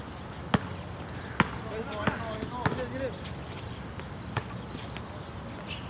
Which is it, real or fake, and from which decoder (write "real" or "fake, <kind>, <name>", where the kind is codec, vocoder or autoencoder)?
real